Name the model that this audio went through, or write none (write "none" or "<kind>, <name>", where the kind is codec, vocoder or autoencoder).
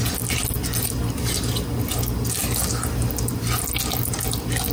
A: none